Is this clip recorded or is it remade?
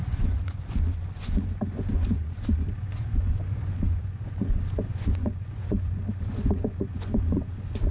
remade